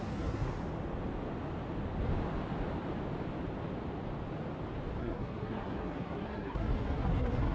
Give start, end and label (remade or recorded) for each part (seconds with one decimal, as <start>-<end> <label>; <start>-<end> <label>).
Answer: 0.0-0.5 remade; 0.5-5.0 recorded; 5.0-7.5 remade